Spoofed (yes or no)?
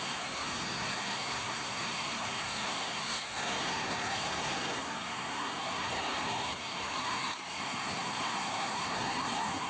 yes